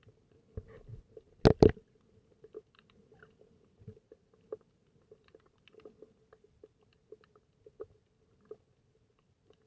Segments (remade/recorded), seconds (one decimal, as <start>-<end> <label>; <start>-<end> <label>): 0.0-9.7 recorded